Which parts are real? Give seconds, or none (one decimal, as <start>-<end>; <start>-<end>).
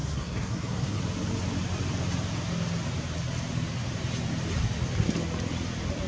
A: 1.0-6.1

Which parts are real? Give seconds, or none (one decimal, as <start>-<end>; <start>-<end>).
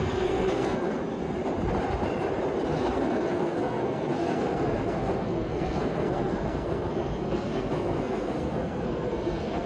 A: 1.0-2.8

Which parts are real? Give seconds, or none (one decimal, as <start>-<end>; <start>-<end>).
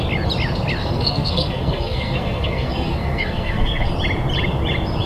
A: 0.0-0.8; 3.9-5.1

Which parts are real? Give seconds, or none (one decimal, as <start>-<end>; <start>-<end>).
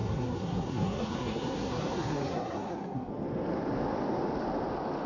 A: 3.1-5.1